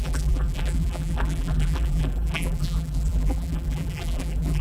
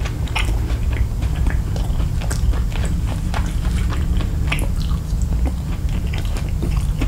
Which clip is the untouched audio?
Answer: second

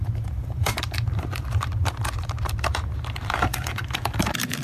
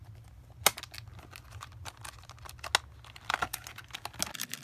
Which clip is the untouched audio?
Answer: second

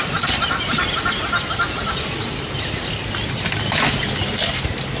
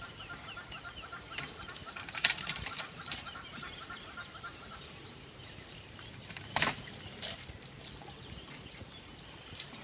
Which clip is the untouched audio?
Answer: first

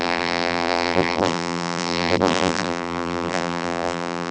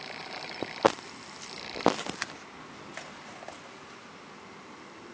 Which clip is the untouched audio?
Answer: second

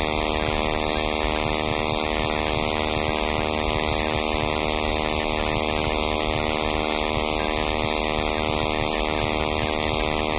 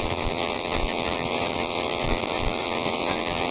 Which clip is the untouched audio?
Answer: first